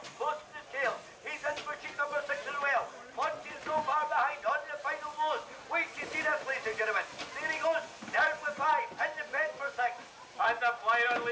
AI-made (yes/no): no